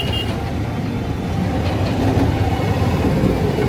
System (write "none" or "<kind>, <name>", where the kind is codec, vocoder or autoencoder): none